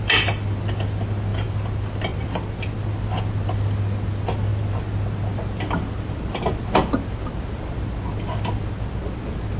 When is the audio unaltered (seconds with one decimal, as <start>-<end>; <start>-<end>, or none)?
0.0-9.6